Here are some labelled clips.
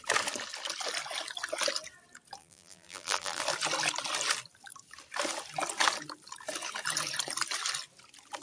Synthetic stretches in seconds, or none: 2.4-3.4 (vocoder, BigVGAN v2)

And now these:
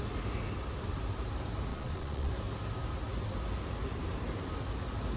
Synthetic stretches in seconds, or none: 1.7-2.3 (vocoder, Vocos)

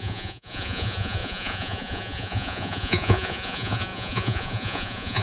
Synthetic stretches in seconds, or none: 0.0-5.2 (vocoder, Vocos)

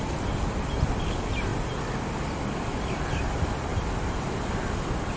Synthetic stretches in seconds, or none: none

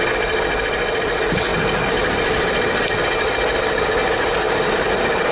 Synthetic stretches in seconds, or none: none

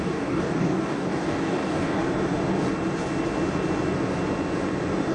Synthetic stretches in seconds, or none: 0.0-2.0 (codec, DAC)

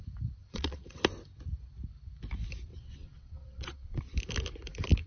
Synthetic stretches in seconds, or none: 0.4-1.0 (vocoder, WaveNeXt); 2.7-4.0

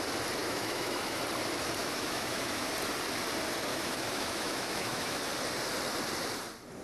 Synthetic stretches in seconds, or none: 0.4-1.2 (autoencoder, DAC-VAE); 1.8-2.7; 3.7-5.2